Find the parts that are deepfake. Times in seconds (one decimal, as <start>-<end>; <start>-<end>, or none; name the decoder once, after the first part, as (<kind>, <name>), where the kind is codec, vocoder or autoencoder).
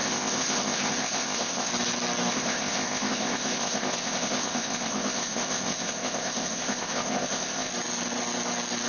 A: 0.0-1.7 (codec, ZipCodec); 2.3-7.7